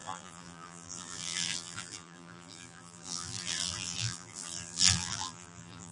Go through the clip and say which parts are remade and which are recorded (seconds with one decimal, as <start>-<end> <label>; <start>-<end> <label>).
0.0-5.9 remade